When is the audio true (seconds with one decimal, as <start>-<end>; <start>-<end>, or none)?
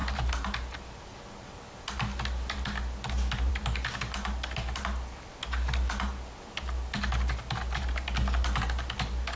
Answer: 0.0-9.4